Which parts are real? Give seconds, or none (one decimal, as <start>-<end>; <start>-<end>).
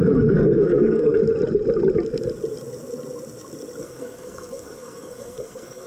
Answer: 1.2-3.8